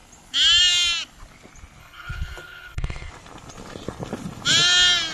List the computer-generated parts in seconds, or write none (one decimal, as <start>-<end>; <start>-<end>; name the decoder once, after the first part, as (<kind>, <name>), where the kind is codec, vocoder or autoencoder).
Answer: 1.8-3.1 (codec, HILCodec)